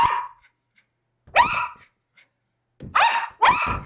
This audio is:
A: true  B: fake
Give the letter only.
A